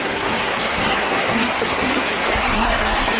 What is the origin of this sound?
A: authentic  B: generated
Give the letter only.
B